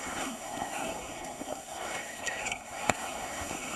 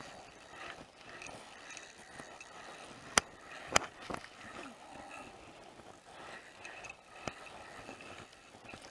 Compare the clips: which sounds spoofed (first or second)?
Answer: first